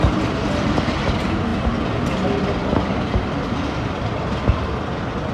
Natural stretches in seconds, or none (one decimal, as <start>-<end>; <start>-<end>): 0.0-5.3